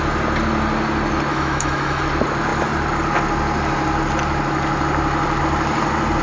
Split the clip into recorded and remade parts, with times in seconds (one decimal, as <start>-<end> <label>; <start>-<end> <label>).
0.0-1.3 recorded; 1.3-2.0 remade; 2.0-6.2 recorded